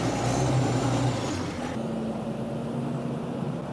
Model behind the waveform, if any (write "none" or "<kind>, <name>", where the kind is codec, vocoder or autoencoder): none